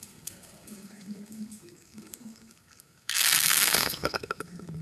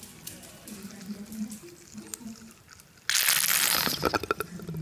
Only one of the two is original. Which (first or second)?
second